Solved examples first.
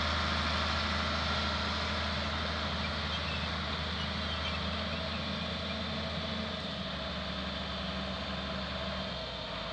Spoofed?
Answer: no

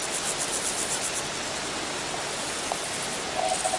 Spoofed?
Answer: no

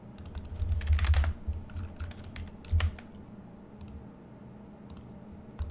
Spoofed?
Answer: no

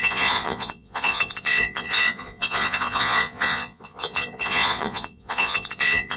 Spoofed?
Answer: yes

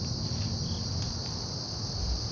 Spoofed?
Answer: no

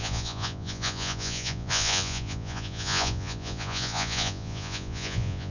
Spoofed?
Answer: yes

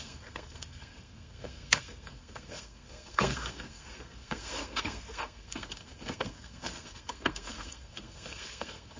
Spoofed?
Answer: yes